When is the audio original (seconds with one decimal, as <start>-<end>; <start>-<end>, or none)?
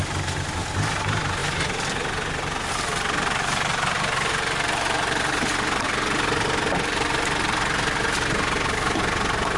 0.0-9.6